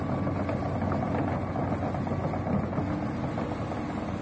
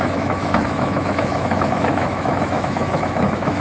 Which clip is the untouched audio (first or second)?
first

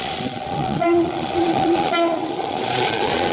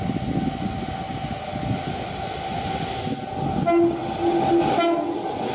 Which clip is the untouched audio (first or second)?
second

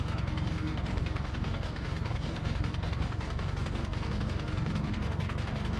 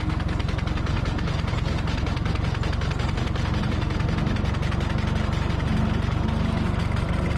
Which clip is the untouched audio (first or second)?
second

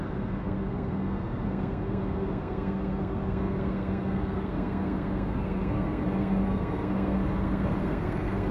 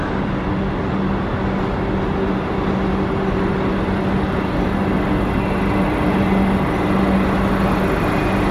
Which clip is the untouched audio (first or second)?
second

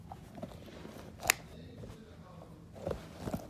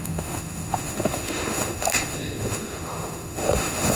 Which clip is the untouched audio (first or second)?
first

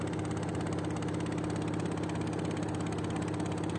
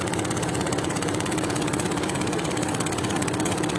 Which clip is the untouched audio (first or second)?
first